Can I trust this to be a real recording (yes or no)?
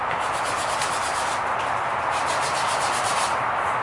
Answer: yes